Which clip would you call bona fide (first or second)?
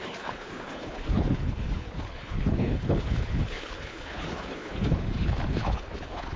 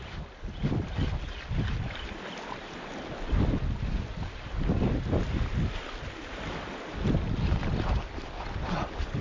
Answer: second